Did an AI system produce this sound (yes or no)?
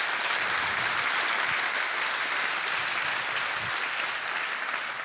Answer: no